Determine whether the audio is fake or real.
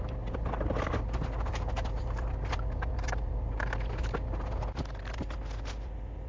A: real